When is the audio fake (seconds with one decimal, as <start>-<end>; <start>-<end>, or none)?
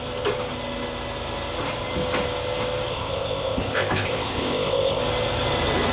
2.9-5.0